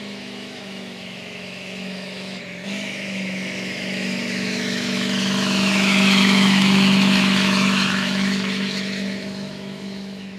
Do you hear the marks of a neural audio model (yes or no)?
yes